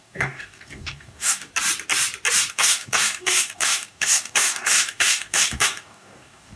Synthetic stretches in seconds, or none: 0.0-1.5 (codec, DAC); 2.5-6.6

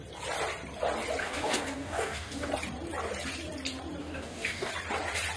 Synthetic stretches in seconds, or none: 1.2-2.5 (codec, DAC); 4.0-4.7

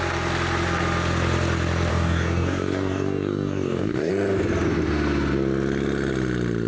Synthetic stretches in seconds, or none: 1.9-4.1 (codec, DAC)

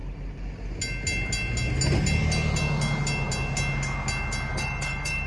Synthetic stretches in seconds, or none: 4.5-5.3 (codec, DAC)

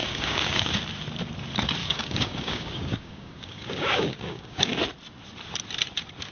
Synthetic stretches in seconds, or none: 0.0-0.7 (codec, DAC); 1.8-4.7

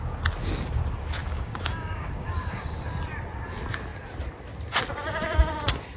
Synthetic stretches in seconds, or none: 1.2-2.9 (codec, DAC)

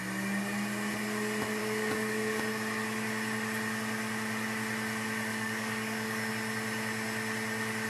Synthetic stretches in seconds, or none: 1.6-2.4 (codec, DAC); 5.3-6.3

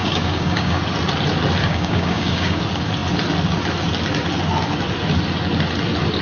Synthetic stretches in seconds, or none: 0.0-0.8 (codec, DAC); 1.6-2.6